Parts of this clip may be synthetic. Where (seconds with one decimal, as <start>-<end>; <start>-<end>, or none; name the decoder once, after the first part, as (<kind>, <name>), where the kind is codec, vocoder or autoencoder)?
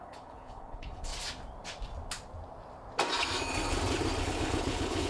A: 0.0-1.1 (codec, HILCodec); 4.2-5.1